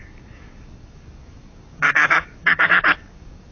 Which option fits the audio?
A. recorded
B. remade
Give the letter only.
B